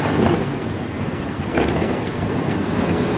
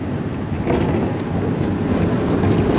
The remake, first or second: first